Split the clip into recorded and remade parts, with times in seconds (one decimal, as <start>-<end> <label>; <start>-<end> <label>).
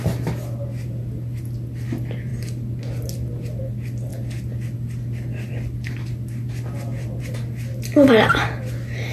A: 0.0-9.1 recorded